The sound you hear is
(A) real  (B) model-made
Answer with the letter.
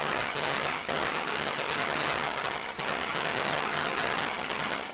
B